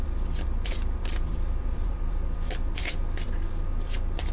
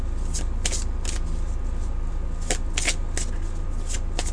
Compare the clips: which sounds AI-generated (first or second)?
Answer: first